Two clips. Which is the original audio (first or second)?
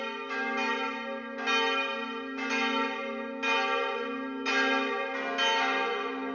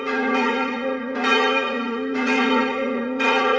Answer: first